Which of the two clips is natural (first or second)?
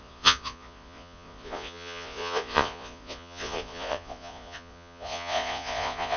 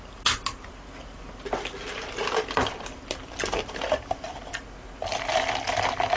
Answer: second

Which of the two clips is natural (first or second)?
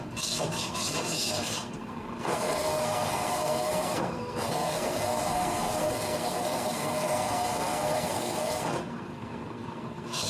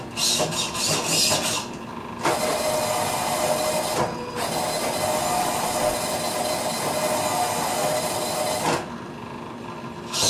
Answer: second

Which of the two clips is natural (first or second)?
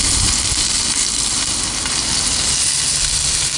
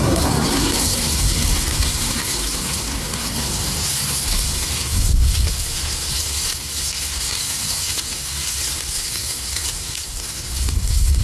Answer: first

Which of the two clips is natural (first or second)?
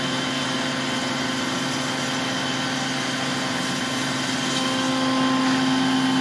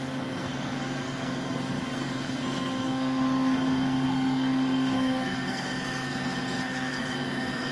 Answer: first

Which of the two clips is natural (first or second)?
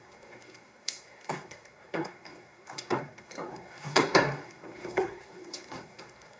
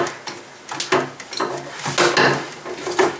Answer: second